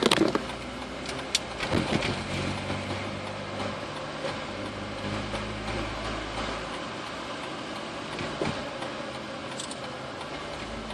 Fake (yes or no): no